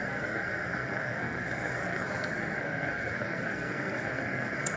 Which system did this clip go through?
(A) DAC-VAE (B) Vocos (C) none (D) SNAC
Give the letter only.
D